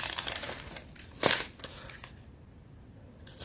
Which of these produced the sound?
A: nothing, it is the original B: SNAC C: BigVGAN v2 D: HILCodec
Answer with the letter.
A